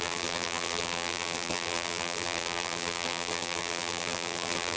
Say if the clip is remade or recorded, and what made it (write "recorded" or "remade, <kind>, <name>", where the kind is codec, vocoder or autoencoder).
remade, vocoder, BigVGAN v2